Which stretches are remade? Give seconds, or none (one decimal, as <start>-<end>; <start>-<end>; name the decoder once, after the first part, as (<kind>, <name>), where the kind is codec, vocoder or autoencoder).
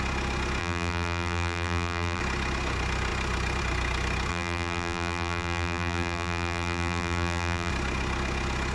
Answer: 0.6-2.2 (vocoder, BigVGAN v2); 4.3-7.7